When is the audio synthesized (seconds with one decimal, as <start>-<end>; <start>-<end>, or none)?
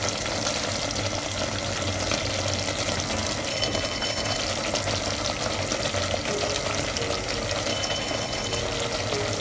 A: 3.5-4.4; 7.7-8.6